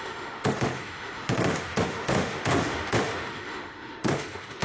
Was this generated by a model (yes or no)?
yes